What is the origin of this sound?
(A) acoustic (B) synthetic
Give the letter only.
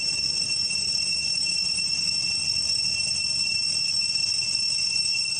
A